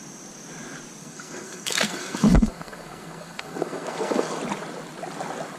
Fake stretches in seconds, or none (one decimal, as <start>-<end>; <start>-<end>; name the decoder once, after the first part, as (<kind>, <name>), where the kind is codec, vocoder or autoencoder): 1.0-4.4 (codec, SNAC)